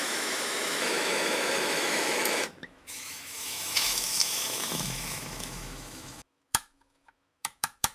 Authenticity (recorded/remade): remade